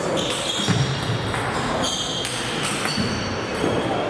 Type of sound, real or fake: real